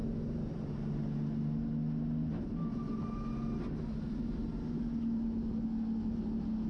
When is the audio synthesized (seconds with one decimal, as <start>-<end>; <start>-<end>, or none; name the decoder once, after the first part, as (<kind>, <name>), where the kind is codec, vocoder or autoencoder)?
none